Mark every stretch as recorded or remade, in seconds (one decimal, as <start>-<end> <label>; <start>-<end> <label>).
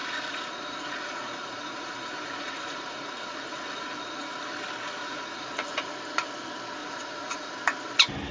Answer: 0.0-4.4 remade; 4.4-5.0 recorded; 5.0-5.9 remade; 5.9-6.8 recorded; 6.8-7.5 remade; 7.5-8.3 recorded